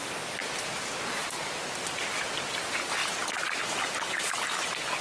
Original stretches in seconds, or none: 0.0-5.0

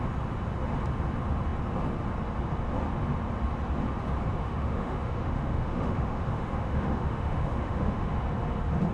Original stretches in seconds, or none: 0.0-4.4; 8.2-8.9

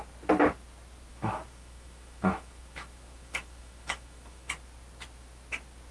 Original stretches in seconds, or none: 0.0-1.1; 4.5-5.9

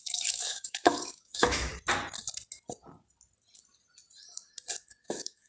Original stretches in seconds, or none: 1.7-5.0